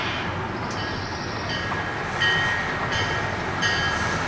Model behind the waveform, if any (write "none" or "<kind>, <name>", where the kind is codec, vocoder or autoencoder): none